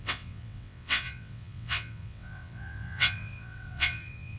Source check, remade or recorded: remade